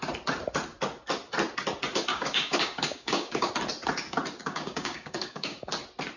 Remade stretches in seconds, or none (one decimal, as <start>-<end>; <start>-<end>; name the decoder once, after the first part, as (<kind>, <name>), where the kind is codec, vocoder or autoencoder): 2.1-3.5 (codec, DAC); 4.4-5.7